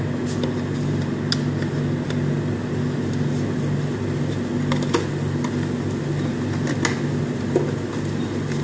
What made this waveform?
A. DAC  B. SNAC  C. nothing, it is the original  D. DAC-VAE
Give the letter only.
C